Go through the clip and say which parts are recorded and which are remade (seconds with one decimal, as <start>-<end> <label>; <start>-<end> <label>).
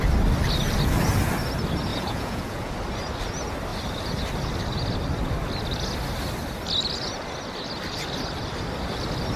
0.0-1.9 recorded; 1.9-2.7 remade; 2.7-9.4 recorded